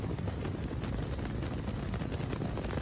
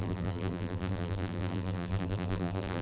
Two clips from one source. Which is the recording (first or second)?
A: first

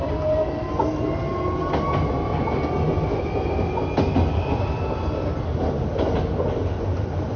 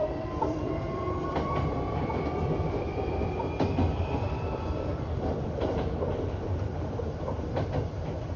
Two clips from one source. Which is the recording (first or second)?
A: first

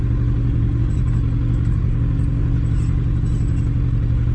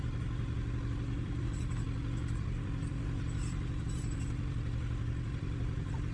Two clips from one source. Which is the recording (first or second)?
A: first